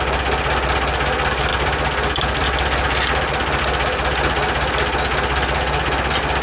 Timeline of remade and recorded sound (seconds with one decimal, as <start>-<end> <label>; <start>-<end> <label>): 0.0-1.5 recorded; 1.5-3.6 remade; 3.6-6.4 recorded